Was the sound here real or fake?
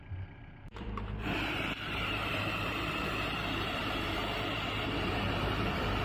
fake